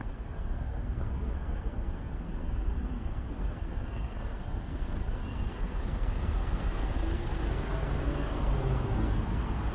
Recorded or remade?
remade